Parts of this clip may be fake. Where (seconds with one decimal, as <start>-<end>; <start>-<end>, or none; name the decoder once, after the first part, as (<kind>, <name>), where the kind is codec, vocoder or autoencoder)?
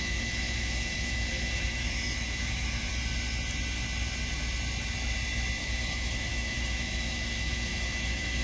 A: 0.0-2.9 (autoencoder, DAC-VAE); 5.6-8.4